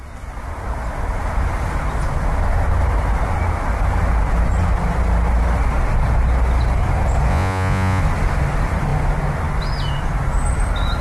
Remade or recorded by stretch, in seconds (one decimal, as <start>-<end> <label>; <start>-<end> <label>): 0.0-7.3 recorded; 7.3-8.0 remade; 8.0-11.0 recorded